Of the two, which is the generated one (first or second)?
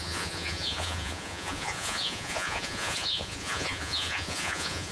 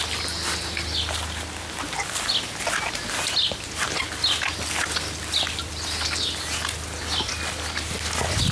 first